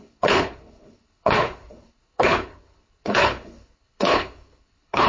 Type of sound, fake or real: fake